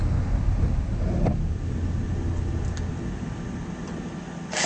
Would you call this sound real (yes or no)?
yes